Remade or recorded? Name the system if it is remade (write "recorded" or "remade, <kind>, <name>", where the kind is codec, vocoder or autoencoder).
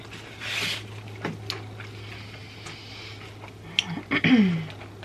recorded